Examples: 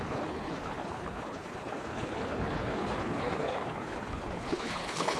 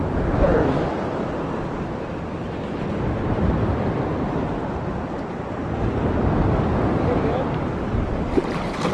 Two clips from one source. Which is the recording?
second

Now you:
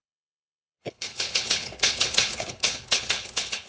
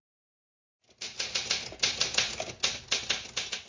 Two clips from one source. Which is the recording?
second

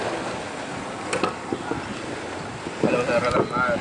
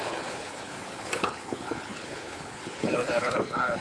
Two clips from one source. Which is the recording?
first